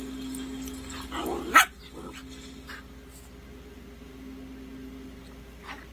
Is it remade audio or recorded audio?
recorded